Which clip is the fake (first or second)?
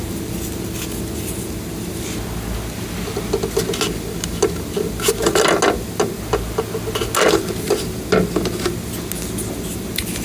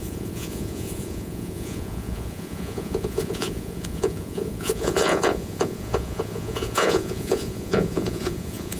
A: second